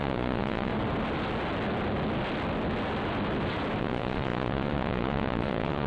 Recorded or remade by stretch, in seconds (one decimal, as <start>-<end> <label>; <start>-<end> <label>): 0.0-0.7 remade; 0.7-3.8 recorded; 3.8-5.9 remade